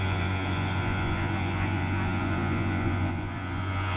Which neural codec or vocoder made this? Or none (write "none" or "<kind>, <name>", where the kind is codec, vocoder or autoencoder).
vocoder, Vocos